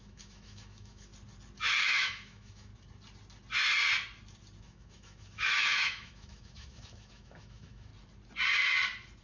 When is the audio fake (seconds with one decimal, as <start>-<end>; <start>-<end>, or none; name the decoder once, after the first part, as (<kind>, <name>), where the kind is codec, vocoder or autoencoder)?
0.0-1.1 (autoencoder, DAC-VAE); 1.8-2.7; 4.6-7.9